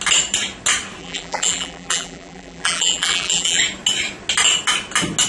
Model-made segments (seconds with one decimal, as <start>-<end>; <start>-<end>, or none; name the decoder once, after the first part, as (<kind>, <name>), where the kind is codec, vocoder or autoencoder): 1.0-3.6 (vocoder, BigVGAN v2)